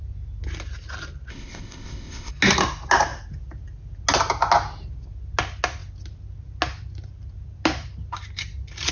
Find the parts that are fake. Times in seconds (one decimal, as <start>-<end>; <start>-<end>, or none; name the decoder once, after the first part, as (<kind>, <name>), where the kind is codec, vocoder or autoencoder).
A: 1.3-2.3 (codec, ZipCodec)